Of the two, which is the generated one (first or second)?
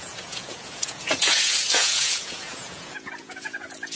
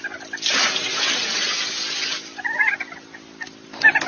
first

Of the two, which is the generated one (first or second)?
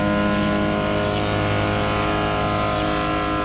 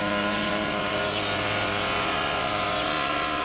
second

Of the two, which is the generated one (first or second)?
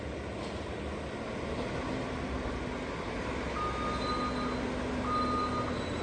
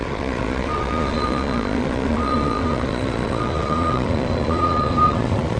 second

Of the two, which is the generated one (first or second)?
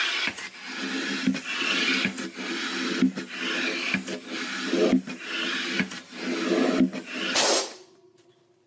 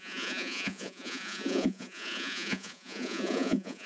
second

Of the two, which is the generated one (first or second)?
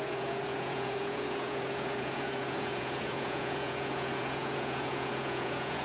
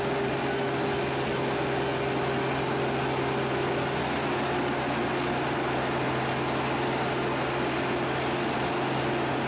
first